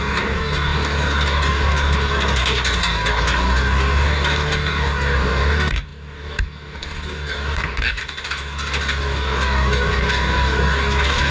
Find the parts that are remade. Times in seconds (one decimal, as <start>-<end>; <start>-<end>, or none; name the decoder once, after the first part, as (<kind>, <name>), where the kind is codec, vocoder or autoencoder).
0.0-11.3 (codec, DAC)